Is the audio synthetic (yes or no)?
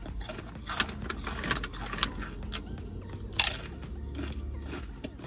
no